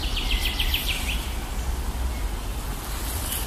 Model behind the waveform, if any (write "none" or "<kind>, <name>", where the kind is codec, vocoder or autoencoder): vocoder, BigVGAN v2